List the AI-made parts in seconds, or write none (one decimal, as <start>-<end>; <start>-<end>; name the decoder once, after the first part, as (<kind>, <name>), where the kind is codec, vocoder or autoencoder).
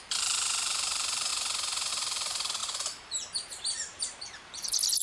0.0-1.3 (vocoder, BigVGAN v2); 1.9-5.0